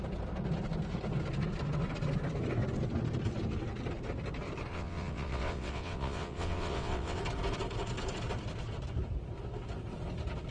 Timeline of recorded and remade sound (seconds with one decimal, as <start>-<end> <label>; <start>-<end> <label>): 0.0-4.7 recorded; 4.7-7.2 remade; 7.2-10.5 recorded